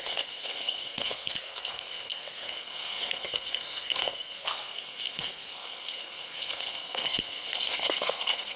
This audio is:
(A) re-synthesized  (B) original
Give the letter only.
A